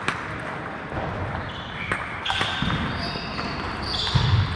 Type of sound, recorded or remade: recorded